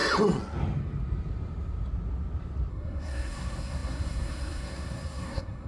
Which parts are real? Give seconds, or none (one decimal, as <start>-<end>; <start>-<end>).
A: 0.0-2.7